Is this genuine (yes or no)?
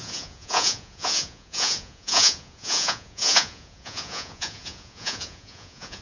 no